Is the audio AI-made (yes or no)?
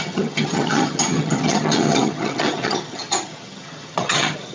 yes